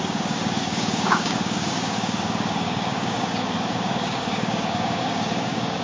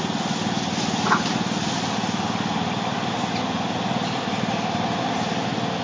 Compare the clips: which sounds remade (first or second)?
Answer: first